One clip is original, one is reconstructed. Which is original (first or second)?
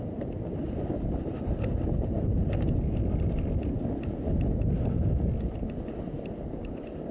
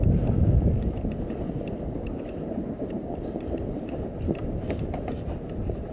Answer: first